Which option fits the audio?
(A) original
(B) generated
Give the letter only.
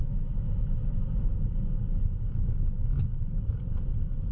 A